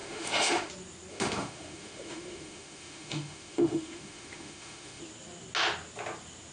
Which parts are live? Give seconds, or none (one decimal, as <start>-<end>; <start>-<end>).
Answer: 0.7-1.1; 5.0-6.5